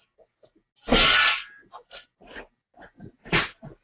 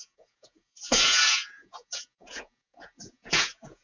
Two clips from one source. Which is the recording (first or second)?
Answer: first